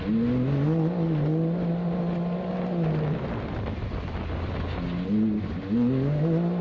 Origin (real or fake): real